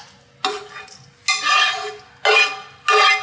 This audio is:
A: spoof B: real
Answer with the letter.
B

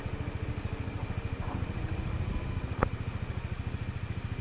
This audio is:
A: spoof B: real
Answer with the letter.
B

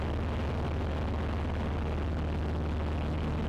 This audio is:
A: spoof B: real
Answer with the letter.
B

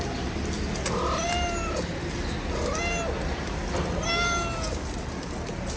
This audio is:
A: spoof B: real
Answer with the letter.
B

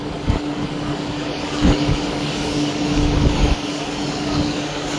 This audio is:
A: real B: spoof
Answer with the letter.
B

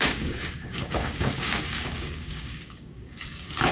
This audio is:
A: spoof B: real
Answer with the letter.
A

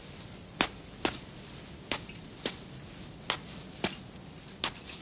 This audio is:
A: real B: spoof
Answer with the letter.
A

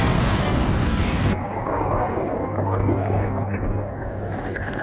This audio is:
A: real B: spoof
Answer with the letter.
B